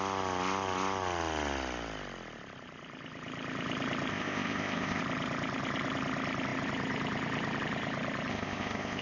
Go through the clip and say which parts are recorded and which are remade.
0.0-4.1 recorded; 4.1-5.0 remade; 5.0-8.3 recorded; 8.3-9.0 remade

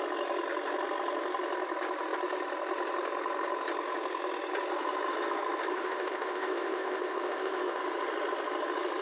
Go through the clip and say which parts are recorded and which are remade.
0.0-5.7 recorded; 5.7-7.8 remade; 7.8-9.0 recorded

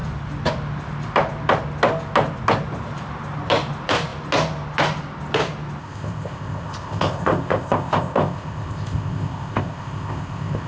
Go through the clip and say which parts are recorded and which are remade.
0.0-5.8 recorded; 5.8-10.7 remade